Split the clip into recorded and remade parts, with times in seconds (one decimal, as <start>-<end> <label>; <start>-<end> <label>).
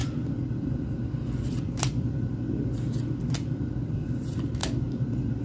0.0-2.4 remade; 2.4-4.6 recorded; 4.6-5.4 remade